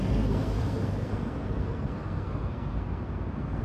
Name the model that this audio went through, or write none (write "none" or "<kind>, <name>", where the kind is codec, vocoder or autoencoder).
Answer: codec, SNAC